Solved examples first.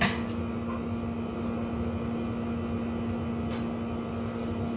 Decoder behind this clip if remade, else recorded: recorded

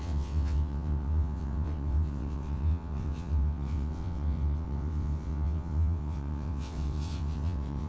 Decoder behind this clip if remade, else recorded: remade, vocoder, WaveNeXt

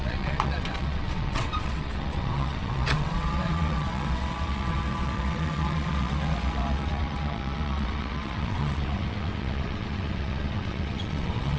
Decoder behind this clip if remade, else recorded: remade, vocoder, WaveNeXt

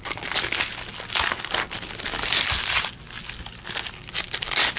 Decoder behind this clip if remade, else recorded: recorded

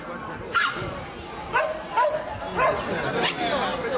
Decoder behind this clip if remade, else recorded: recorded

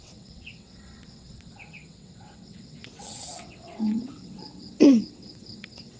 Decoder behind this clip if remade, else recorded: remade, vocoder, WaveNeXt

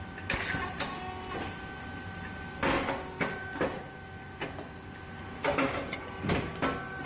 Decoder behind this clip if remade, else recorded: recorded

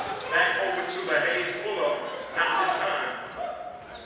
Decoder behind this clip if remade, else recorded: recorded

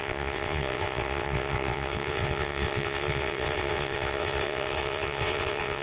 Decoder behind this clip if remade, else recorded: remade, vocoder, WaveNeXt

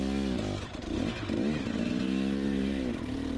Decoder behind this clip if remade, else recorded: recorded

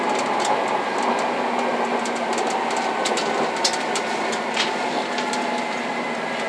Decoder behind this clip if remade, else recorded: recorded